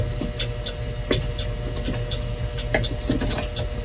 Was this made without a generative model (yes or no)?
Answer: yes